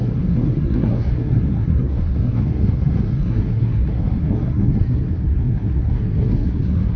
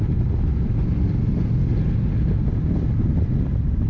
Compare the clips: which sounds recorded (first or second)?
second